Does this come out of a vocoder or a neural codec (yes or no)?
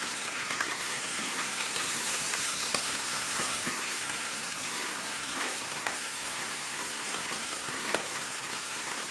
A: yes